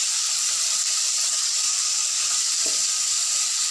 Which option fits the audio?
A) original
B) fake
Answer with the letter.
B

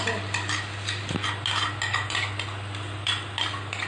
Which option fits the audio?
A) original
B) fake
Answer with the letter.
A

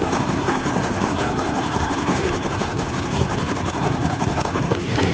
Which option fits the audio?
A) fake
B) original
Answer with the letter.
A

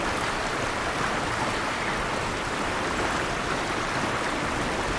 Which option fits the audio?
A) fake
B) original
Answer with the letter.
B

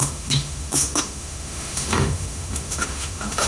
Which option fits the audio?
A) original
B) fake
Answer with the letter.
B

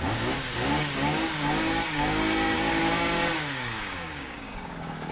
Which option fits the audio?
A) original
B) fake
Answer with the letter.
B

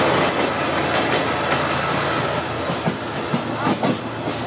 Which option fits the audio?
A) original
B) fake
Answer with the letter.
A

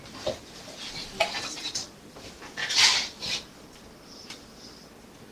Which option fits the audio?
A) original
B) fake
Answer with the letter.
A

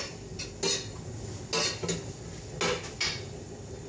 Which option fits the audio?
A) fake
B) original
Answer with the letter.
B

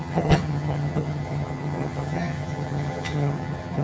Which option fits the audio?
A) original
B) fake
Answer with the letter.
B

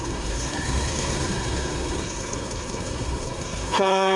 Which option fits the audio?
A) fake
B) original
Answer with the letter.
A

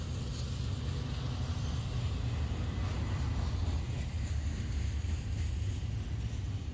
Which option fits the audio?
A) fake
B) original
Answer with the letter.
B